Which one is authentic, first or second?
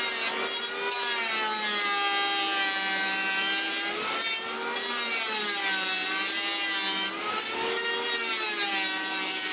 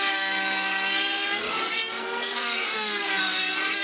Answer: first